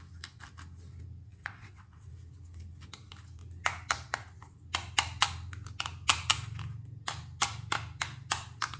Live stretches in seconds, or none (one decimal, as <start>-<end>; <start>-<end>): 0.0-1.3; 2.1-8.8